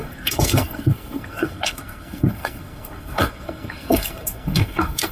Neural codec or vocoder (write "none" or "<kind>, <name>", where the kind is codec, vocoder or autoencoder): codec, SNAC